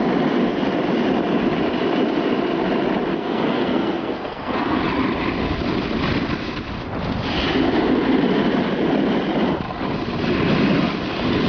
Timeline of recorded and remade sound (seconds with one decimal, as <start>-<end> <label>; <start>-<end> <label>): 0.0-3.1 recorded; 3.1-4.8 remade; 4.8-11.5 recorded